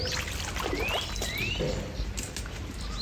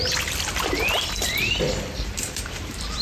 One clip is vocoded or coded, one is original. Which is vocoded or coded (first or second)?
second